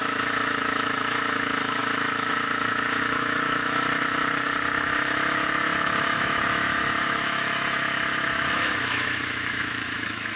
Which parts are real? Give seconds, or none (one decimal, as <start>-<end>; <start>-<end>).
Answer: none